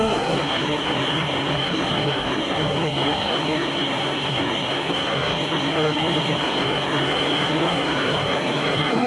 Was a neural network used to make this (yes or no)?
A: yes